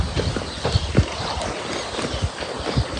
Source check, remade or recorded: recorded